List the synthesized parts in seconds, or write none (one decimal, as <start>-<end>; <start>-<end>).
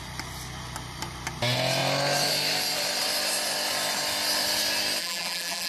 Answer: 5.0-5.7